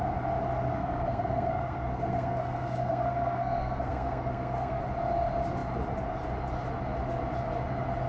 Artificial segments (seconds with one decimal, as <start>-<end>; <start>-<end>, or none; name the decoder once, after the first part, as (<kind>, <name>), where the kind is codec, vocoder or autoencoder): 0.7-4.8 (codec, SNAC)